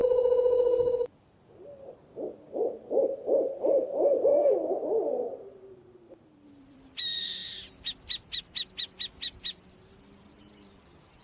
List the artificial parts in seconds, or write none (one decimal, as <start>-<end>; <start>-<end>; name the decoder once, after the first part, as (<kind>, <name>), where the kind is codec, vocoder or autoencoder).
3.9-4.3 (vocoder, BigVGAN v2); 6.1-7.4; 9.9-11.2